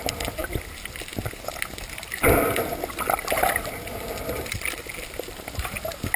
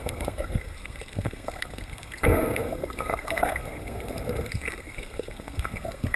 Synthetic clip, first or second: second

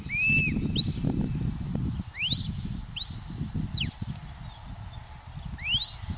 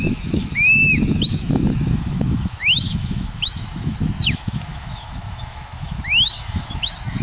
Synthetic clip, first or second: second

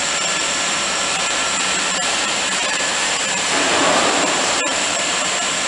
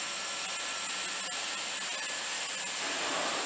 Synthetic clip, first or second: first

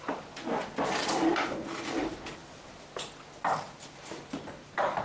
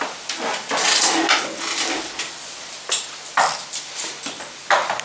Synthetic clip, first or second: first